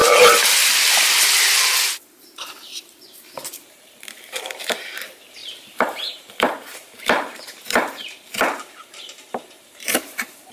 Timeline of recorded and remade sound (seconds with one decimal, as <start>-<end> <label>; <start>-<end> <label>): 0.0-2.3 recorded; 2.3-10.5 remade